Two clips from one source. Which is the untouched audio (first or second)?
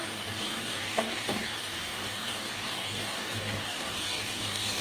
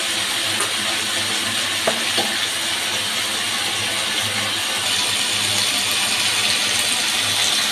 second